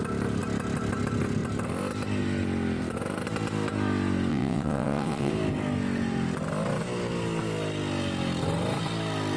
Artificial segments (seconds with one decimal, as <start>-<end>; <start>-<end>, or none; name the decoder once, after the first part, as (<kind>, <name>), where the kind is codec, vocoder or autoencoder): 4.3-5.3 (vocoder, WaveNeXt)